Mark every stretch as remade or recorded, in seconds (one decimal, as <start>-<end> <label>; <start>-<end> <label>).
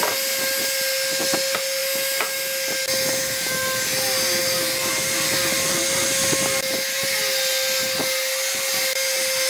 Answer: 0.0-9.5 recorded